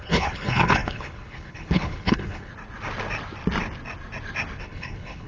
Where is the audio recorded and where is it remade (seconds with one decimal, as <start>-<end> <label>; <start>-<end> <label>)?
0.0-2.5 remade; 2.5-4.6 recorded; 4.6-5.3 remade